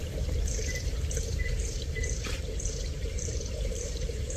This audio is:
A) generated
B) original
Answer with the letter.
A